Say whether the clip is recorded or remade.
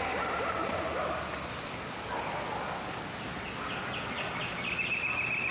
recorded